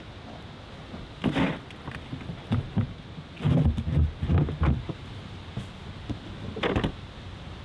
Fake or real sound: real